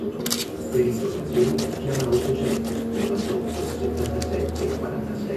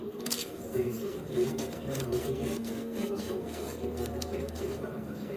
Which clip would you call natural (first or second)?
first